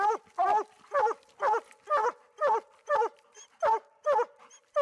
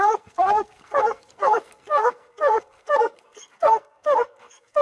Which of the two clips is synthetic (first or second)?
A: second